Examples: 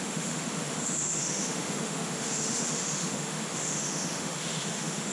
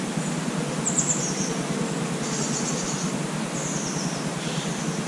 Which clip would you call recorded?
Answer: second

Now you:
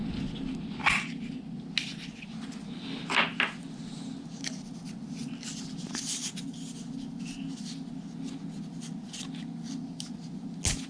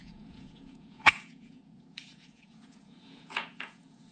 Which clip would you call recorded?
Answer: first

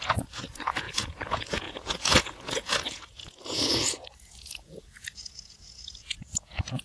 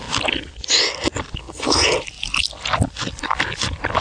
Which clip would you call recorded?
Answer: second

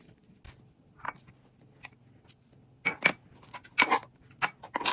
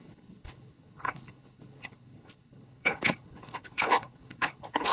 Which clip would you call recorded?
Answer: first